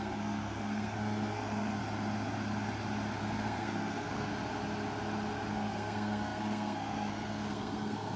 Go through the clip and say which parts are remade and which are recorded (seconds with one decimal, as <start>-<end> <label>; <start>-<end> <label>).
0.0-1.8 remade; 1.8-3.2 recorded; 3.2-4.3 remade; 4.3-5.5 recorded; 5.5-8.2 remade

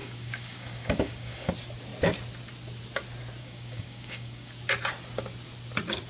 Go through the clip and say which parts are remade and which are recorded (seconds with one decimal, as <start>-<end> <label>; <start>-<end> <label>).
0.0-1.5 remade; 1.5-3.4 recorded; 3.4-4.5 remade; 4.5-6.1 recorded

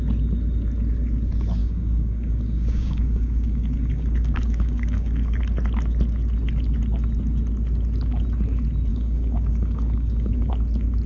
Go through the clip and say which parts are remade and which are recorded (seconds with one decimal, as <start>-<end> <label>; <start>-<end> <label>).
0.0-1.6 recorded; 1.6-5.4 remade; 5.4-8.9 recorded; 8.9-10.5 remade; 10.5-11.1 recorded

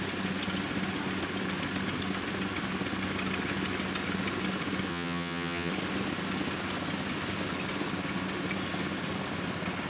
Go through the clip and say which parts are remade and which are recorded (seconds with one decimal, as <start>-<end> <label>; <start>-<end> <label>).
0.0-4.9 recorded; 4.9-5.7 remade; 5.7-9.9 recorded

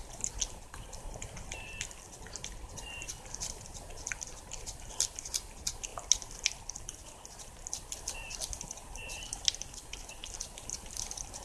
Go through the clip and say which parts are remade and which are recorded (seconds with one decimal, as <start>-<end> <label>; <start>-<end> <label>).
0.0-11.4 recorded

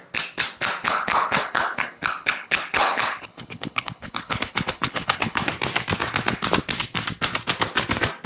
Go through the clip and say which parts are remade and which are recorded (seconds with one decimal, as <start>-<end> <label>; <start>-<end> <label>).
0.0-0.8 recorded; 0.8-5.5 remade; 5.5-8.3 recorded

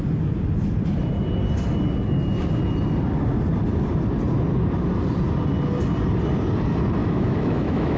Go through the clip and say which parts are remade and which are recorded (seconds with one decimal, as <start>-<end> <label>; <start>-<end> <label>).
0.0-7.0 recorded; 7.0-8.0 remade

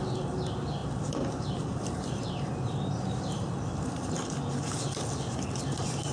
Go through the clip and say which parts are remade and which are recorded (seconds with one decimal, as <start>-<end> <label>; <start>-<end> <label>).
0.0-0.8 recorded; 0.8-3.5 remade; 3.5-6.1 recorded